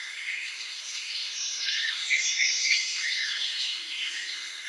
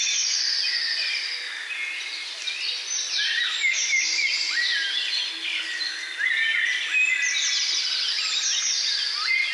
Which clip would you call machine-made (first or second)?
first